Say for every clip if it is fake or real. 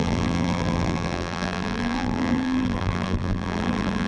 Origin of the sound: fake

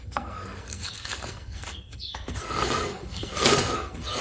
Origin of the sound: fake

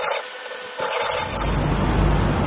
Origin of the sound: real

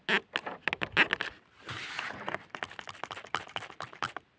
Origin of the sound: real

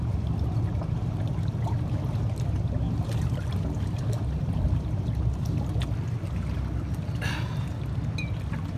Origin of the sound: real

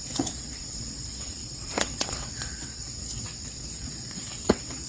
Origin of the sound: fake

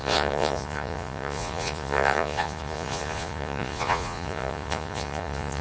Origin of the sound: fake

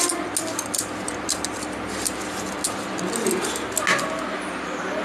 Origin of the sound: real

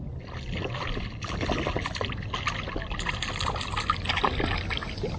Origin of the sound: real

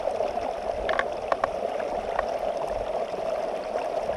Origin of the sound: real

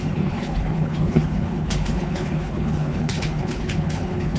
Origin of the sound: fake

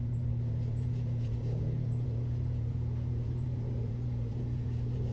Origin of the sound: fake